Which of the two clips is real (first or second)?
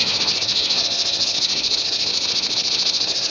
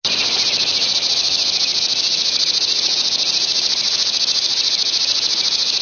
second